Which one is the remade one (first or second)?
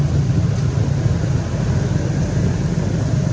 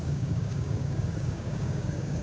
second